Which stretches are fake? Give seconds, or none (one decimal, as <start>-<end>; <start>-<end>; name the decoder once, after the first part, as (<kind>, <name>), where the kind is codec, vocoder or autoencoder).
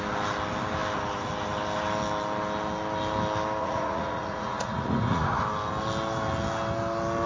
3.6-5.4 (vocoder, Vocos)